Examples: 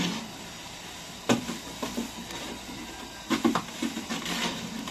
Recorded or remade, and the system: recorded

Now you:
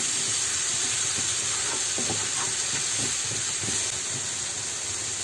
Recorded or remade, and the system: recorded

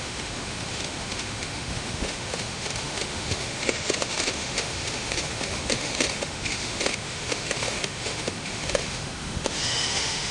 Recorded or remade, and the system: remade, autoencoder, DAC-VAE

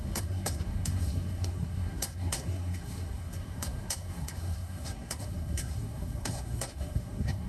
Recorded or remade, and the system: remade, codec, SNAC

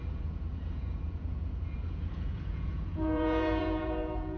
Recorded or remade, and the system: remade, vocoder, Vocos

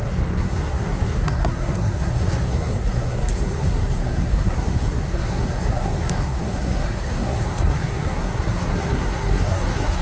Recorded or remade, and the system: remade, codec, SNAC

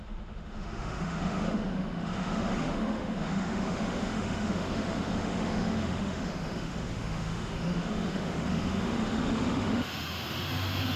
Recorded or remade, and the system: remade, autoencoder, DAC-VAE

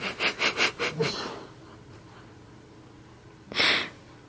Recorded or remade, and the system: recorded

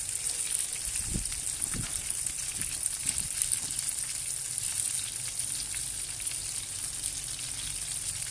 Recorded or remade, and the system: recorded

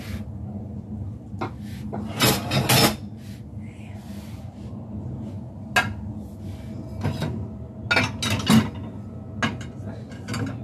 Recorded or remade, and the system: recorded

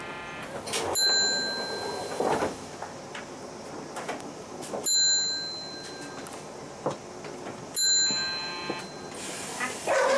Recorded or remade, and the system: recorded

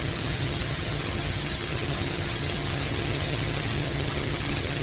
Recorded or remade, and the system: remade, vocoder, HiFi-GAN